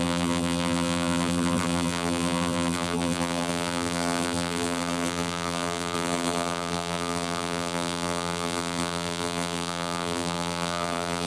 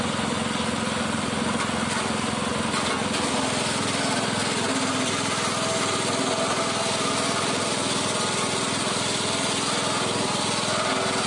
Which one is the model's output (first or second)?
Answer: first